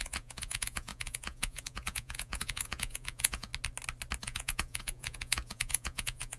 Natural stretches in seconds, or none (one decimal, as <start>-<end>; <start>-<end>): 3.5-4.2